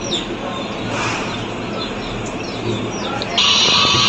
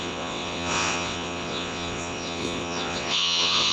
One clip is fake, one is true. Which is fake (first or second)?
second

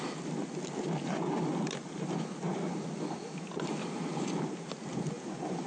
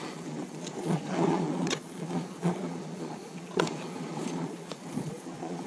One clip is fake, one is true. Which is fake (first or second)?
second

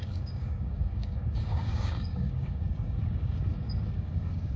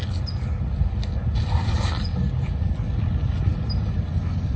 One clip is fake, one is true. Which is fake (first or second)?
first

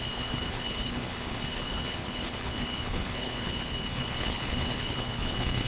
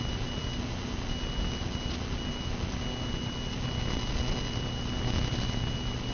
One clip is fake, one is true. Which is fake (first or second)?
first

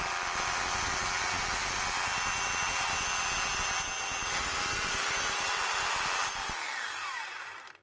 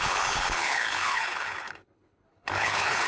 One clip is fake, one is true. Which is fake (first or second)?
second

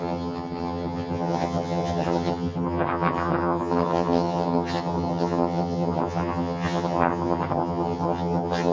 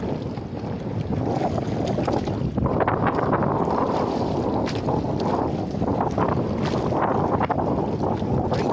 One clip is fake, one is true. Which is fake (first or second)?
first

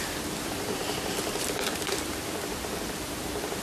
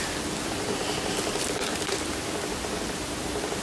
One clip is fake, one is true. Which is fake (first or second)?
first